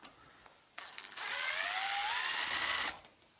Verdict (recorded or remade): recorded